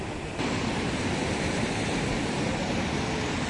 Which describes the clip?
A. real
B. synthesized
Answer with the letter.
A